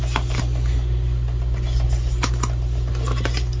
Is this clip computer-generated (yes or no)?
no